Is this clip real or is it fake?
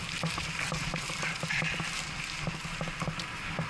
real